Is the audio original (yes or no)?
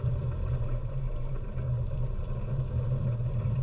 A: no